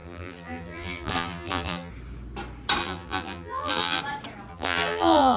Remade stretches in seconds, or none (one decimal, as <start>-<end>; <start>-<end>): 0.0-1.9; 2.8-4.0; 4.5-5.4

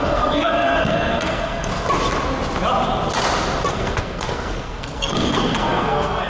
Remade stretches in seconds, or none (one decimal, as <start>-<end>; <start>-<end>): 0.0-1.7; 3.7-6.3

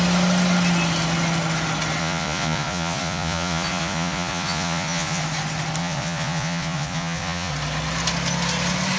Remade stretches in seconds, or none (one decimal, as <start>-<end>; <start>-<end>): 2.0-5.2; 5.8-7.5

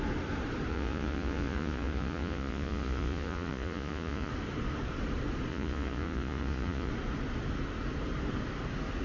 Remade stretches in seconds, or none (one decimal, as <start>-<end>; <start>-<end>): 0.7-4.3; 5.5-6.9

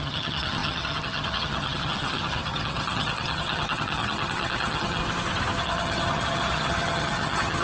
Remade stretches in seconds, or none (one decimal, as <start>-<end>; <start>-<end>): 0.0-5.0; 5.6-7.6

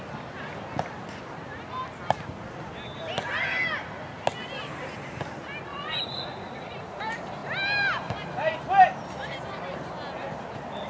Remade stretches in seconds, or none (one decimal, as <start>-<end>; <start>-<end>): 5.7-7.0

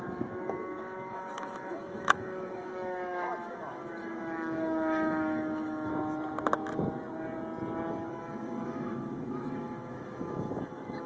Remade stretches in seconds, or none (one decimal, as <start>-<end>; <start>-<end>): 0.0-5.9; 8.1-11.1